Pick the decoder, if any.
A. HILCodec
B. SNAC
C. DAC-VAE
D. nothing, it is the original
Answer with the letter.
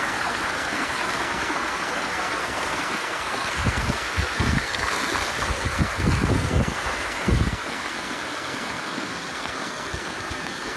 B